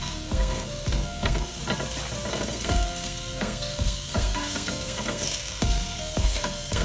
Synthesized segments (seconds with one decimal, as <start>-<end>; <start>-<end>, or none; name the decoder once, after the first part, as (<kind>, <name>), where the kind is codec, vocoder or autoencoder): 0.0-1.6 (codec, SNAC); 2.3-6.8